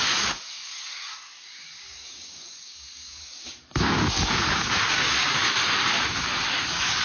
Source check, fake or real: fake